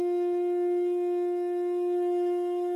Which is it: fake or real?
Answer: real